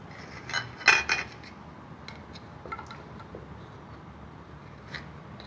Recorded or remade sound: recorded